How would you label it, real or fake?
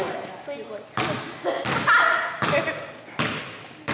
real